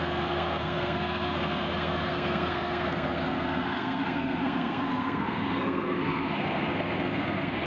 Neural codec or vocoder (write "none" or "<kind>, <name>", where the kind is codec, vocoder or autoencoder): codec, SNAC